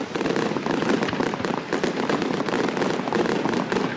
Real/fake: real